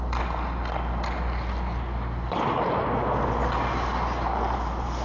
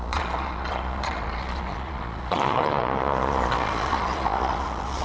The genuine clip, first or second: first